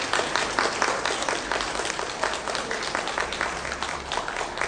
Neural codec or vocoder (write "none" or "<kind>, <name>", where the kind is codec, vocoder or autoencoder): none